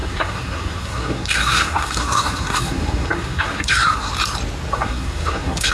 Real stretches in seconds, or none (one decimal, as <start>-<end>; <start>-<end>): 4.1-4.7